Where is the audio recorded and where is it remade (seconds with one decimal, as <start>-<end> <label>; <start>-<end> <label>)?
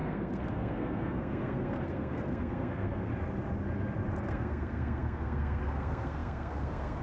0.0-3.1 remade; 3.1-4.2 recorded; 4.2-7.0 remade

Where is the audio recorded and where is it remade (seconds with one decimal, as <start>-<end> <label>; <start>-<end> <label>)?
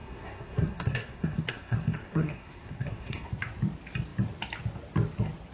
0.0-3.3 remade; 3.3-5.5 recorded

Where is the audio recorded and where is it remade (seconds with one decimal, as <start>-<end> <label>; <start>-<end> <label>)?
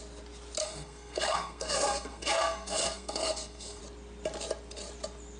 0.0-0.6 recorded; 0.6-3.8 remade; 3.8-5.4 recorded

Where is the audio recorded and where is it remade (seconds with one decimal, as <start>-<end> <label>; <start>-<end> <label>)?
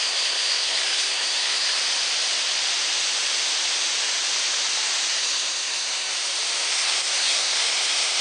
0.0-1.8 remade; 1.8-5.1 recorded; 5.1-6.1 remade; 6.1-6.7 recorded; 6.7-8.2 remade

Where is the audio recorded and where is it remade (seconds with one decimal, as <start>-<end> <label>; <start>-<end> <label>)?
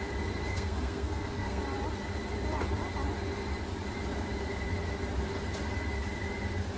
0.0-0.5 recorded; 0.5-1.6 remade; 1.6-6.8 recorded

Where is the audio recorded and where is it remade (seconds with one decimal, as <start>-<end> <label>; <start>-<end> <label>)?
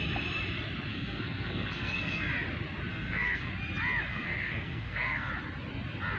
0.0-0.9 recorded; 0.9-2.3 remade; 2.3-2.9 recorded; 2.9-3.5 remade; 3.5-4.1 recorded; 4.1-5.3 remade; 5.3-6.2 recorded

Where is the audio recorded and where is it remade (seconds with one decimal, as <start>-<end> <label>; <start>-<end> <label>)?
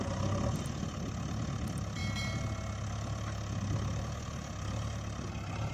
0.0-5.7 recorded